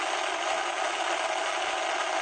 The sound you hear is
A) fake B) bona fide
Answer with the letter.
B